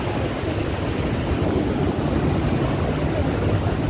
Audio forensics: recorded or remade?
recorded